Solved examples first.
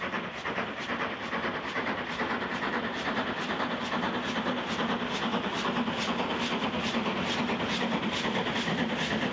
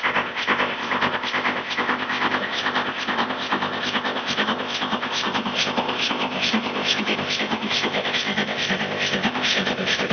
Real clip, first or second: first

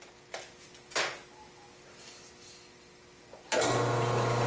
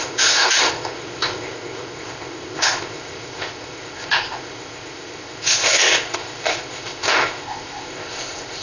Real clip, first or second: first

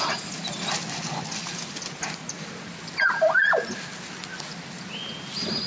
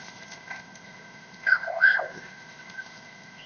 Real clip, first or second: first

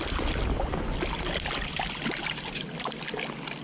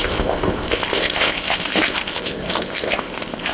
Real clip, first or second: first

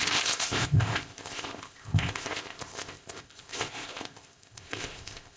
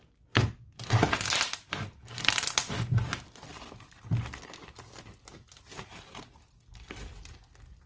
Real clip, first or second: second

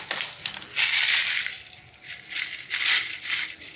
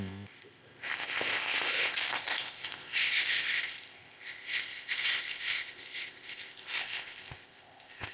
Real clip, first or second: first